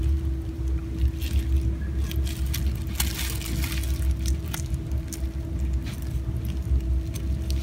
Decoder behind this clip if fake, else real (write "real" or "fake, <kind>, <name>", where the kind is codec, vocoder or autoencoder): real